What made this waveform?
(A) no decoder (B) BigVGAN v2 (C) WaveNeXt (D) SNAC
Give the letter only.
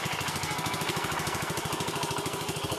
D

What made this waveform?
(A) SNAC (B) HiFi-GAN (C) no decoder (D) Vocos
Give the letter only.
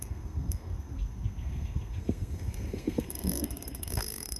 A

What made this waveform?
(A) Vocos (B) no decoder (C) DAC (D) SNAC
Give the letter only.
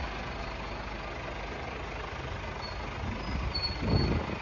B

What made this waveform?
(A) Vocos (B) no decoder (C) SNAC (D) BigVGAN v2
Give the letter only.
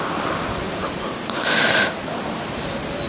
B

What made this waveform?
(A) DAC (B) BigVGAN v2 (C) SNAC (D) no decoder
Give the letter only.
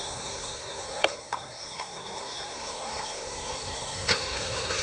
C